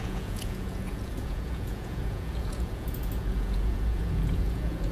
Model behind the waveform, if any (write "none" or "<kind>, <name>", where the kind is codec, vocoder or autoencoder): vocoder, Vocos